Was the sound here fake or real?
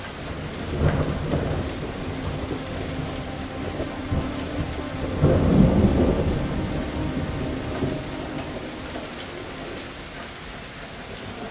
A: real